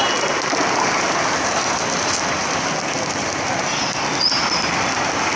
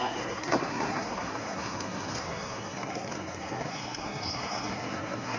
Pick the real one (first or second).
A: first